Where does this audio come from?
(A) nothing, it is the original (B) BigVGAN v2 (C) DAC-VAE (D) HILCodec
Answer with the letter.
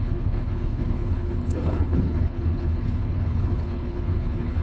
D